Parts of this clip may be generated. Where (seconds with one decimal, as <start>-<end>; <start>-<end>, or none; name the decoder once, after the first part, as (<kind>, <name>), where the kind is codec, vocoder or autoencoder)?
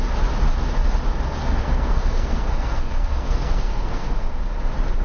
1.4-4.4 (codec, SNAC)